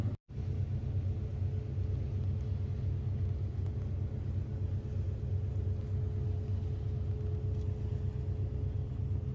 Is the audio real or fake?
real